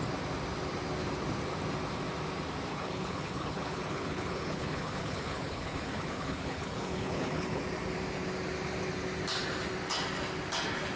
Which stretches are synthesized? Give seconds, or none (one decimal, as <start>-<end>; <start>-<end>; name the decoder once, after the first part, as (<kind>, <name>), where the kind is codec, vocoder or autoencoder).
2.7-7.6 (codec, HILCodec)